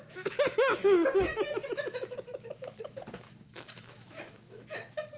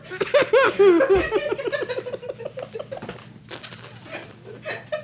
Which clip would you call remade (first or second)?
first